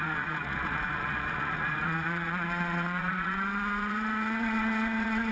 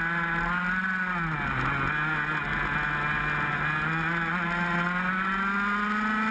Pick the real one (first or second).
second